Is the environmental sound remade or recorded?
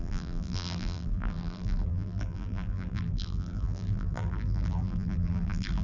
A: remade